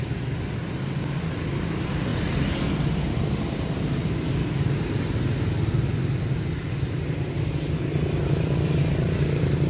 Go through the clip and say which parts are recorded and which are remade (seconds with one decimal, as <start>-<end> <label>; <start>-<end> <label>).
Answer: 0.0-2.1 recorded; 2.1-2.9 remade; 2.9-9.7 recorded